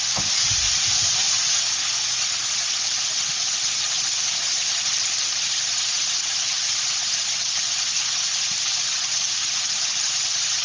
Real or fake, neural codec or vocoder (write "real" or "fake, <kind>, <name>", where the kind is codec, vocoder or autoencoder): real